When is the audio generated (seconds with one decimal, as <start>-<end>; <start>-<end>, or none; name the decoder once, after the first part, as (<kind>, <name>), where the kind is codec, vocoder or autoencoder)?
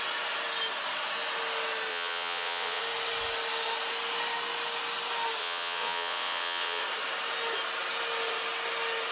1.9-2.8 (vocoder, WaveNeXt); 5.4-6.8